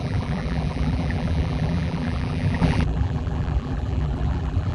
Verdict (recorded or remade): remade